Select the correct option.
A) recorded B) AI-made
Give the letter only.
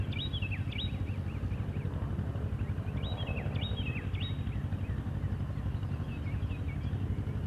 A